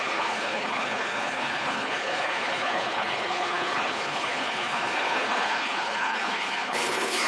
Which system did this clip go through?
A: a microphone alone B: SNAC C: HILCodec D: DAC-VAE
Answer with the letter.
C